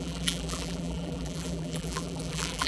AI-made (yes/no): yes